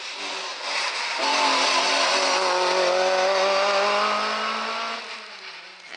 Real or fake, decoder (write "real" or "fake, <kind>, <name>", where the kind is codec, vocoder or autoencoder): real